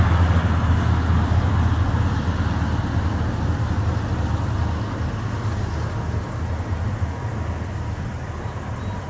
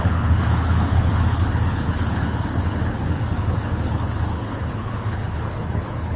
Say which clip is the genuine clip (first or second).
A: first